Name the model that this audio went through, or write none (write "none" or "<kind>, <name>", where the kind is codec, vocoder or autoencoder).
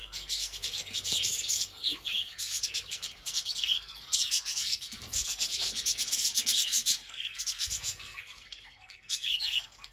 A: codec, SNAC